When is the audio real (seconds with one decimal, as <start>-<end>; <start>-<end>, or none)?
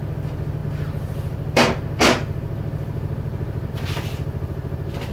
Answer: none